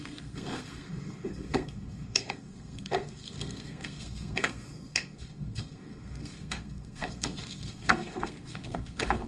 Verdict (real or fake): fake